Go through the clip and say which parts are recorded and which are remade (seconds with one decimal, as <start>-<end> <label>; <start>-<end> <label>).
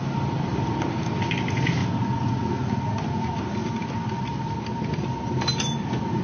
0.0-6.2 recorded